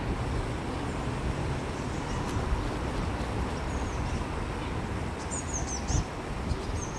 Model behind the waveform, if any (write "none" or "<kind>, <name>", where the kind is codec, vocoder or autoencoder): none